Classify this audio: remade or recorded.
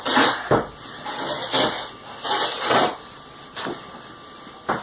recorded